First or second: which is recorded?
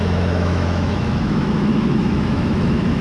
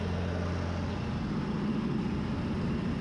second